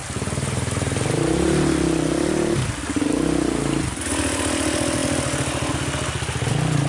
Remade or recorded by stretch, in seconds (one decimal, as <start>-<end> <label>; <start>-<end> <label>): 0.0-6.9 recorded